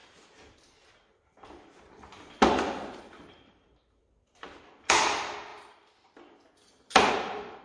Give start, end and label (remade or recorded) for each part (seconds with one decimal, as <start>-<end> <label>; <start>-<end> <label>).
0.0-5.5 remade; 5.5-7.1 recorded; 7.1-7.6 remade